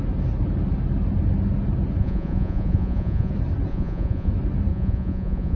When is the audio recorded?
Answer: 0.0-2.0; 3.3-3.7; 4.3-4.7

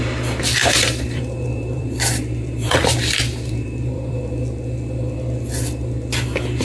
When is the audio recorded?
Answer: 0.0-0.6; 4.2-6.6

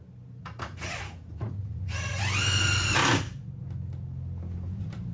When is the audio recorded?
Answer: 0.0-0.4; 2.2-5.1